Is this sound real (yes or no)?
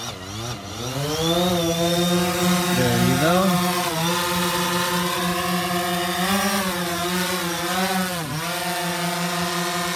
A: yes